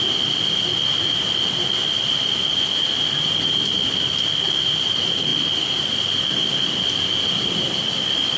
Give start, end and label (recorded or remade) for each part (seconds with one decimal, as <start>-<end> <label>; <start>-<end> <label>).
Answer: 0.0-8.4 recorded